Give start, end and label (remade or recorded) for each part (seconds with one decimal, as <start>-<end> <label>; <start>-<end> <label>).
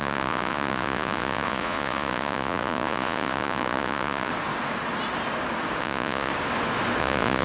0.0-4.3 remade; 4.3-5.8 recorded; 5.8-6.3 remade; 6.3-7.0 recorded; 7.0-7.4 remade